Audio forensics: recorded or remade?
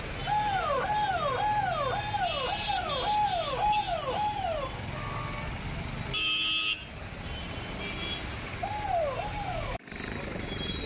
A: recorded